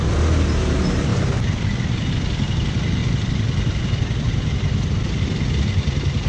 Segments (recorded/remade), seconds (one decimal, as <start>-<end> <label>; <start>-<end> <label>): 0.0-1.1 recorded; 1.1-2.1 remade; 2.1-3.0 recorded; 3.0-5.7 remade; 5.7-6.3 recorded